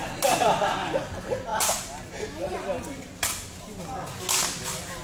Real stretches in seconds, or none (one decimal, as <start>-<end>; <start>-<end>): 0.0-5.0